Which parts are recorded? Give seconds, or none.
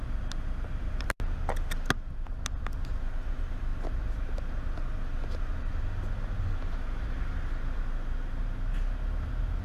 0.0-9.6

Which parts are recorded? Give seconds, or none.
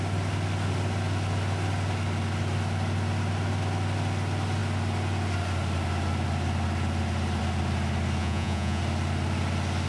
0.0-8.2; 8.8-9.9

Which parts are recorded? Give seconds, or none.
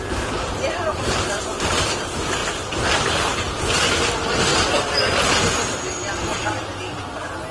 4.5-7.5